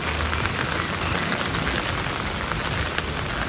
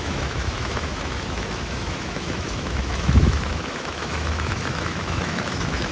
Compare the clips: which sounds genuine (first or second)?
first